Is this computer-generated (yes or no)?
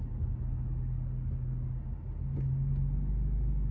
no